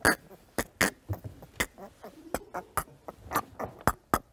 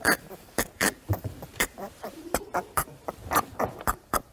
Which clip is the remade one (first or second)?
second